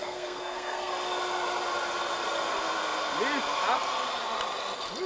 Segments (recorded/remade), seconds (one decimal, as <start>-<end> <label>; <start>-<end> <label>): 0.0-0.9 remade; 0.9-5.1 recorded

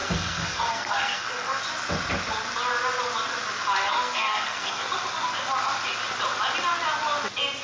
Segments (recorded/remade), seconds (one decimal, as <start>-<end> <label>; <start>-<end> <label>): 0.0-1.6 remade; 1.6-3.9 recorded; 3.9-4.8 remade; 4.8-7.6 recorded

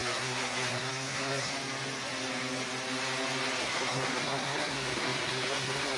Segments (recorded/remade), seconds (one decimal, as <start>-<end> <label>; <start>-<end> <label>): 0.0-1.5 remade; 1.5-3.6 recorded; 3.6-6.0 remade